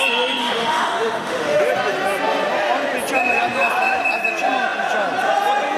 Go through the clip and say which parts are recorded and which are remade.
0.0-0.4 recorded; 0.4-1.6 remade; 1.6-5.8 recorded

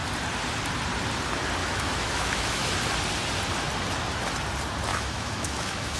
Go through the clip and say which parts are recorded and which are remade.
0.0-1.6 recorded; 1.6-2.7 remade; 2.7-4.9 recorded; 4.9-6.0 remade

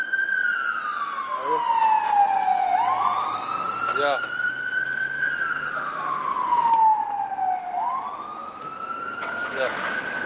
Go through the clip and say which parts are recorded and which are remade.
0.0-10.3 recorded

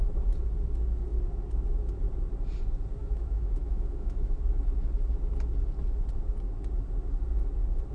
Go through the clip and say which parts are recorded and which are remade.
0.0-3.0 recorded; 3.0-4.4 remade; 4.4-7.9 recorded

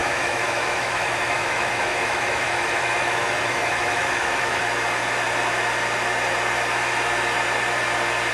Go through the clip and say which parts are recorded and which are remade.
0.0-4.6 remade; 4.6-8.3 recorded

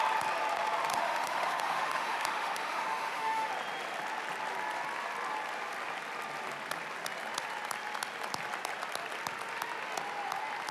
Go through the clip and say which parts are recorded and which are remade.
0.0-0.9 recorded; 0.9-3.5 remade; 3.5-10.7 recorded